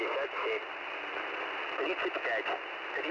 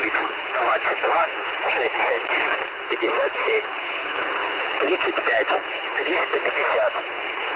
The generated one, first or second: second